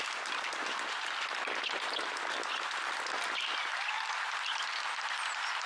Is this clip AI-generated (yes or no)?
no